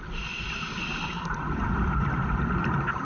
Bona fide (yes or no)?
yes